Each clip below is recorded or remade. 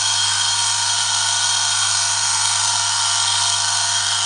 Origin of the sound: remade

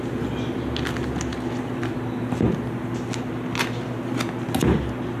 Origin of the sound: recorded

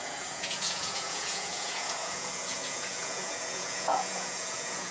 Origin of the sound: remade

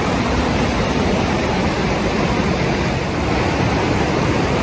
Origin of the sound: remade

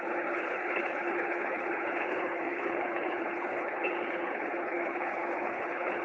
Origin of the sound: remade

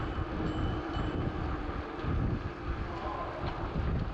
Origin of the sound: recorded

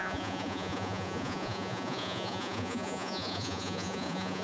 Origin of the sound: remade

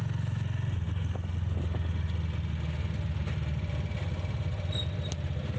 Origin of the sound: recorded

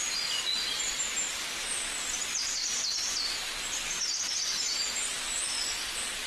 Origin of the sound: remade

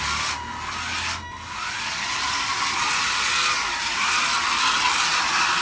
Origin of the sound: recorded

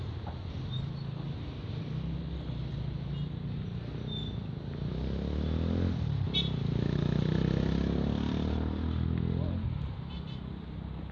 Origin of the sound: recorded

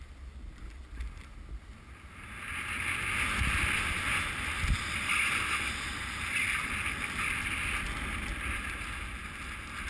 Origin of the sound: recorded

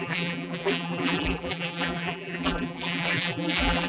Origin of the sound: remade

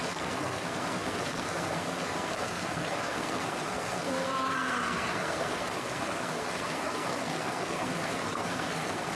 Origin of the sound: remade